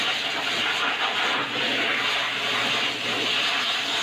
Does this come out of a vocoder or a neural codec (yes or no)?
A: no